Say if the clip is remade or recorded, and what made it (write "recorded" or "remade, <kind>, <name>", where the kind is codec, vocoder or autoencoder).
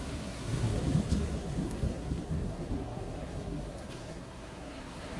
remade, codec, SNAC